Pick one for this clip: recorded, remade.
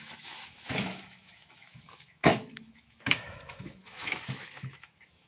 remade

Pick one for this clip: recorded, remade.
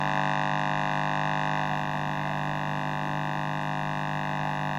recorded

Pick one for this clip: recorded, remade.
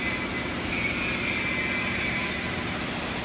recorded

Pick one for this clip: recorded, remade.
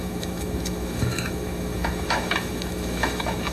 remade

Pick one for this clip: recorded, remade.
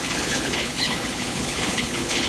remade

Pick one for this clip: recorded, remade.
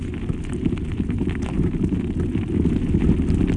recorded